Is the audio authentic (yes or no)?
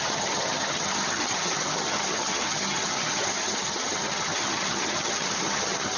no